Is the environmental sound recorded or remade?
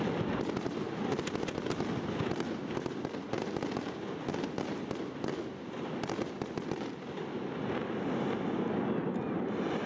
recorded